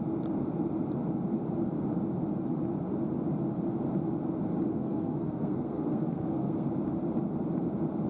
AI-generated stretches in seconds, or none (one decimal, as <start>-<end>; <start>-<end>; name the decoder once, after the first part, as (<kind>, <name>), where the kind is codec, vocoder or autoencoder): 4.7-6.7 (codec, SNAC)